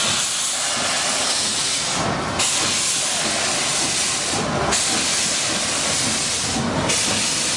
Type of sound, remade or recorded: recorded